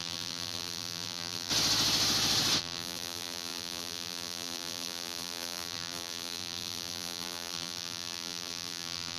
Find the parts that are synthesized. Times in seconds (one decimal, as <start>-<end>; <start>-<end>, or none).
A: 0.0-1.5; 2.6-9.2